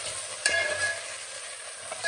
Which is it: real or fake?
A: real